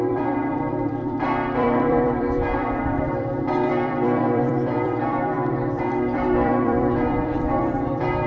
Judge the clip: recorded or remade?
remade